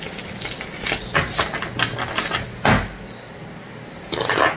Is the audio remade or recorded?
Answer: recorded